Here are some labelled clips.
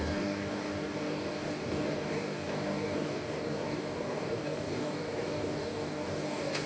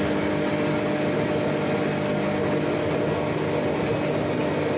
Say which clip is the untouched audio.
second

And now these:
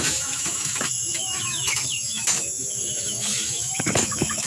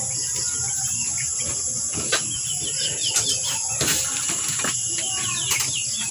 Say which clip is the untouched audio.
second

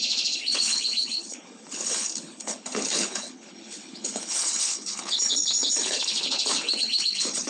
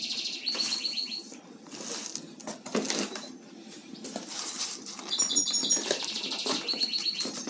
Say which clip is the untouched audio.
second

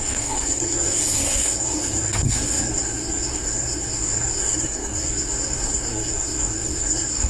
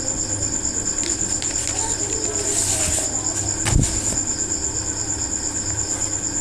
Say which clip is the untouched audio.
second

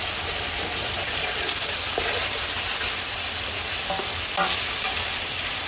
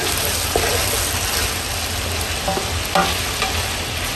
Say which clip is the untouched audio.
second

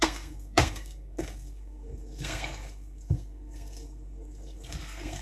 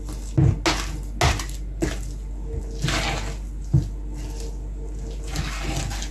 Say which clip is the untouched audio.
second